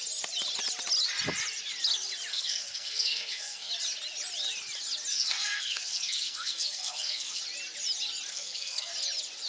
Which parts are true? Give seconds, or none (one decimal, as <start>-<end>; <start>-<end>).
0.0-2.3; 3.7-5.1; 7.4-8.3; 8.9-9.5